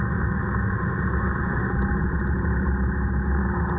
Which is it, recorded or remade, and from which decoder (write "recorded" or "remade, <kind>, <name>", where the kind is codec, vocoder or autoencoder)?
recorded